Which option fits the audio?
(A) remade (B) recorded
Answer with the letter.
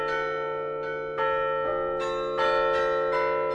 B